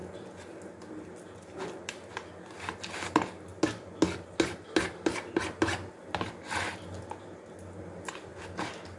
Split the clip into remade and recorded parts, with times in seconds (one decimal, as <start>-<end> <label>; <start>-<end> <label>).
0.0-9.0 recorded